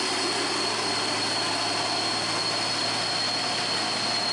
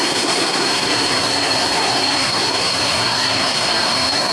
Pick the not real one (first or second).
second